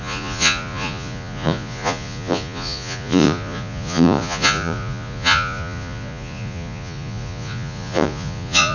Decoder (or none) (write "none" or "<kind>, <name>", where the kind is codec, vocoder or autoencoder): vocoder, Vocos